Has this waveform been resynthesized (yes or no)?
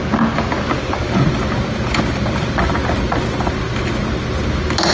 no